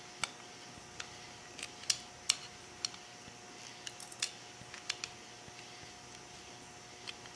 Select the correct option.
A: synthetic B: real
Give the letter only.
B